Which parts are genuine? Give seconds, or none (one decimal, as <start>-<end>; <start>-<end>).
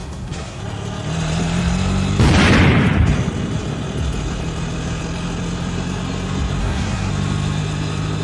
0.6-6.6; 7.1-8.2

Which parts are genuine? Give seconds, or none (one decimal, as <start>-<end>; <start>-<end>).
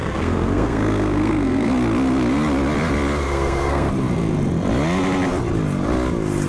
1.7-3.2; 3.9-6.5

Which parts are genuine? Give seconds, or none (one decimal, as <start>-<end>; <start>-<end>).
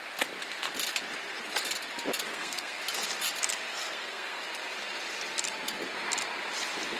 0.0-2.3; 2.8-3.7; 4.4-7.0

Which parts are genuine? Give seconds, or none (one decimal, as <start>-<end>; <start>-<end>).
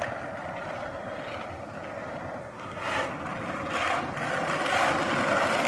0.0-2.4; 3.1-5.7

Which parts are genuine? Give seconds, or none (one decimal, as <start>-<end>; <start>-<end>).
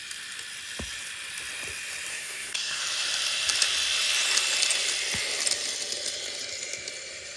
0.0-2.1; 2.8-7.4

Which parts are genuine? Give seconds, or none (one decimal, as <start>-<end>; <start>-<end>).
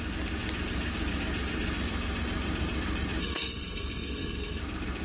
0.0-3.2; 4.6-5.0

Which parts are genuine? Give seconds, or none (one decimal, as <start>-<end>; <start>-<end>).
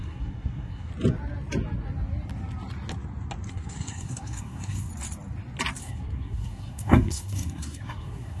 0.9-3.5; 4.9-5.8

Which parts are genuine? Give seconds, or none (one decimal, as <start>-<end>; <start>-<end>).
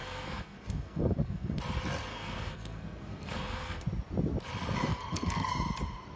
1.6-2.1; 3.8-4.9; 5.5-6.2